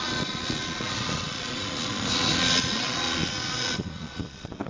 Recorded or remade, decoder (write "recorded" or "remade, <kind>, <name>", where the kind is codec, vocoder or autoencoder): remade, vocoder, Vocos